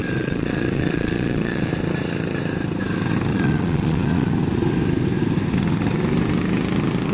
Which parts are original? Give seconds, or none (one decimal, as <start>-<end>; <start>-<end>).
1.7-3.3; 4.3-7.1